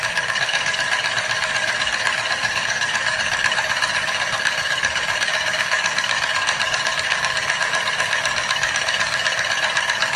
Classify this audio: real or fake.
fake